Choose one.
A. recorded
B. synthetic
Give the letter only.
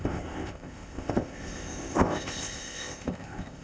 B